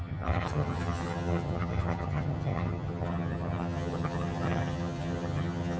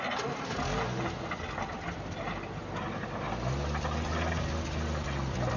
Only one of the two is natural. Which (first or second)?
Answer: second